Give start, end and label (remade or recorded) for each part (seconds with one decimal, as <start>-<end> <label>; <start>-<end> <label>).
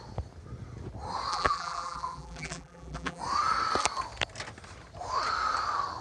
0.0-1.3 recorded; 1.3-3.2 remade; 3.2-6.0 recorded